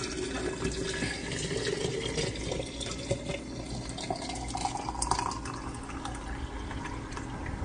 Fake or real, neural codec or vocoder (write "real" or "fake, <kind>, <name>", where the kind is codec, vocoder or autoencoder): real